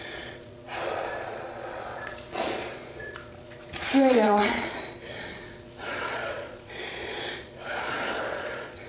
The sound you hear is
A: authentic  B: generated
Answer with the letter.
B